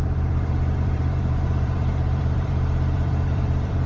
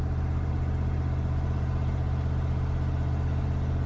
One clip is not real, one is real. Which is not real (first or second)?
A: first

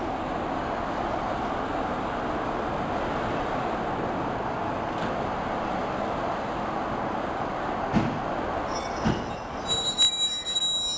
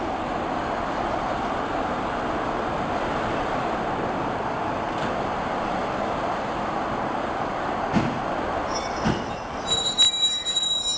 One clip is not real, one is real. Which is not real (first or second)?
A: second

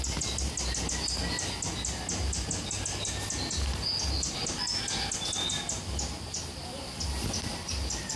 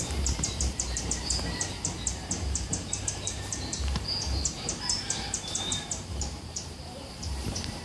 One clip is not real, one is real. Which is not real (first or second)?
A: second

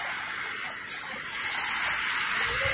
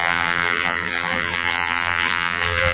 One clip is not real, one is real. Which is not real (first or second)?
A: second